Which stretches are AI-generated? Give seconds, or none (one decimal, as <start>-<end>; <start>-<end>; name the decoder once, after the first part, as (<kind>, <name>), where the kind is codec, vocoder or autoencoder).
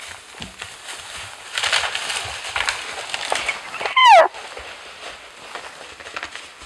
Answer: none